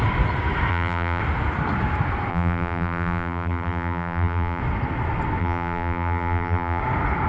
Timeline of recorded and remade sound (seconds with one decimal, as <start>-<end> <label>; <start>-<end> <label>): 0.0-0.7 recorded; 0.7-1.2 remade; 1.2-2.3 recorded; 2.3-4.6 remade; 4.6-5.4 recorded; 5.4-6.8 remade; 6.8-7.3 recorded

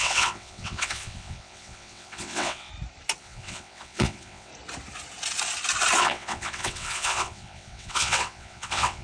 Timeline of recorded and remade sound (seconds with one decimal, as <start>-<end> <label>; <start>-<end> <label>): 0.0-2.7 remade; 2.7-3.2 recorded; 3.2-4.5 remade; 4.5-6.0 recorded; 6.0-9.0 remade

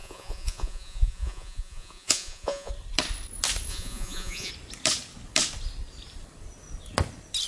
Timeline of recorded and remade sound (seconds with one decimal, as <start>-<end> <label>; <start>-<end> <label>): 0.0-2.7 remade; 2.7-3.7 recorded; 3.7-4.5 remade; 4.5-7.5 recorded

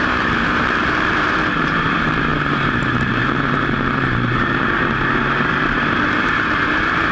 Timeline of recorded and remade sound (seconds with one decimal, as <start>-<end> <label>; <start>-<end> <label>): 0.0-7.1 remade

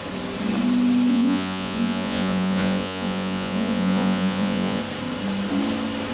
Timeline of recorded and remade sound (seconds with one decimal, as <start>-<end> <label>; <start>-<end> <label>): 0.0-1.1 recorded; 1.1-4.8 remade; 4.8-6.1 recorded

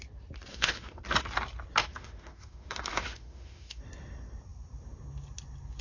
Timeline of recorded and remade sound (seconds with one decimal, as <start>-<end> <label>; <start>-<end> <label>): 0.0-0.5 recorded; 0.5-1.0 remade; 1.0-1.8 recorded; 1.8-3.8 remade; 3.8-5.8 recorded

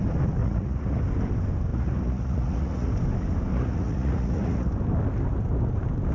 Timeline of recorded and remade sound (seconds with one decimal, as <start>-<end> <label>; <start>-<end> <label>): 0.0-0.4 recorded; 0.4-1.0 remade; 1.0-1.7 recorded; 1.7-2.9 remade; 2.9-3.5 recorded; 3.5-4.7 remade; 4.7-6.1 recorded

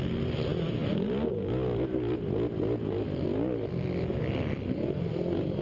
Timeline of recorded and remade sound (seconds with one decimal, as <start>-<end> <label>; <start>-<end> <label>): 0.0-5.6 recorded